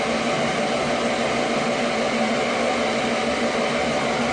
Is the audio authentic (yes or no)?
yes